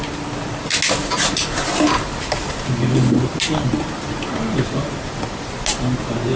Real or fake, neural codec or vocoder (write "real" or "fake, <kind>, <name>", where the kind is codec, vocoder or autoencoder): real